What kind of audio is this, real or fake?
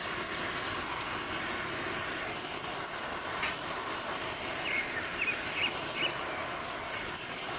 real